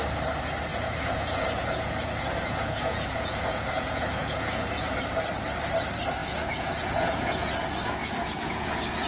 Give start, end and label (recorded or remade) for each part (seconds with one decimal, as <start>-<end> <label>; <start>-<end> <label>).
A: 0.0-0.7 recorded; 0.7-5.0 remade; 5.0-6.2 recorded; 6.2-7.5 remade; 7.5-8.0 recorded; 8.0-8.7 remade; 8.7-9.1 recorded